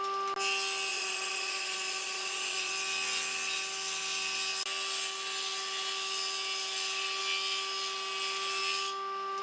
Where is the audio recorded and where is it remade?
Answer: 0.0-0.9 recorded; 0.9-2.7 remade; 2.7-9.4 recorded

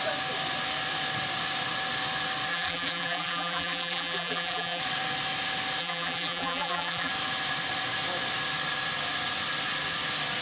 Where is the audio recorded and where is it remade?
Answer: 0.0-2.5 recorded; 2.5-4.8 remade; 4.8-5.8 recorded; 5.8-7.1 remade; 7.1-10.4 recorded

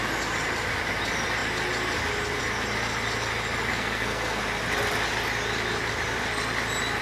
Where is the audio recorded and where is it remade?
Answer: 0.0-3.7 recorded; 3.7-4.4 remade; 4.4-7.0 recorded

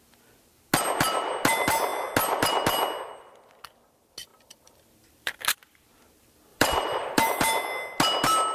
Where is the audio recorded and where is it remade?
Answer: 0.0-4.3 recorded; 4.3-5.4 remade; 5.4-6.5 recorded; 6.5-7.2 remade; 7.2-8.5 recorded

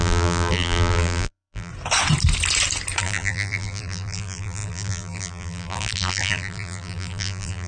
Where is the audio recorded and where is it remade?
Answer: 0.0-1.7 remade; 1.7-3.0 recorded; 3.0-7.7 remade

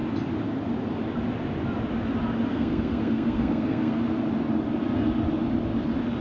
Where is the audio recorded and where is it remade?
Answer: 0.0-2.5 recorded; 2.5-4.0 remade; 4.0-6.2 recorded

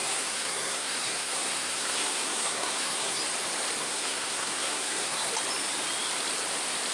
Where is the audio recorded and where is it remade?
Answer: 0.0-3.2 remade; 3.2-3.8 recorded; 3.8-5.3 remade; 5.3-6.9 recorded